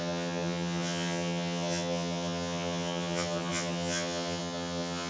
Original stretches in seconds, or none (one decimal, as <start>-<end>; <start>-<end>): none